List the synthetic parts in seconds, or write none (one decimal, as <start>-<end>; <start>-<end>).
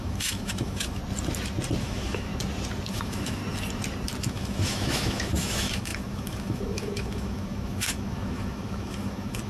0.0-1.0; 1.8-2.3; 2.9-3.4; 4.2-9.5